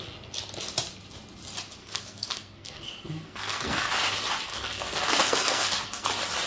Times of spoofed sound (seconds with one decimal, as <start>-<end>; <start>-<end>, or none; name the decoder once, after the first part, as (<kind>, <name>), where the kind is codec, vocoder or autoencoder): 1.8-3.9 (codec, SNAC); 4.5-6.1